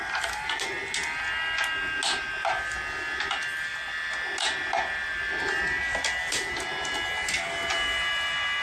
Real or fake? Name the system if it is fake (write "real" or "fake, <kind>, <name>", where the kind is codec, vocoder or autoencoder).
real